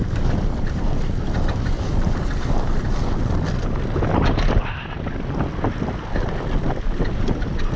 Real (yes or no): yes